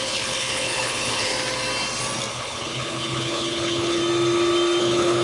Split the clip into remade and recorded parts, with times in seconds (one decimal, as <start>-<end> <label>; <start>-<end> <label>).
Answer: 0.0-1.3 remade; 1.3-2.3 recorded; 2.3-4.0 remade; 4.0-4.8 recorded; 4.8-5.2 remade